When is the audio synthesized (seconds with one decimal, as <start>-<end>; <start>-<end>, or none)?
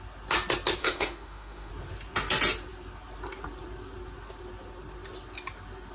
0.8-1.7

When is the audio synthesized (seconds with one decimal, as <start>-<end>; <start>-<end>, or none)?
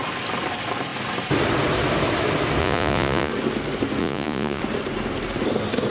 2.6-3.3; 4.0-4.6